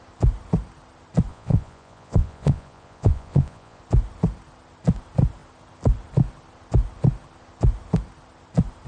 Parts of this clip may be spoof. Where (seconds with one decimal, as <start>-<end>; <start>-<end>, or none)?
1.3-3.8